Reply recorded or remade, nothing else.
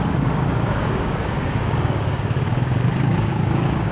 remade